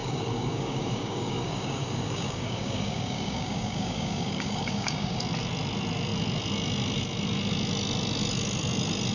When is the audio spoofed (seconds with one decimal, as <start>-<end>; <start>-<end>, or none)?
0.0-5.2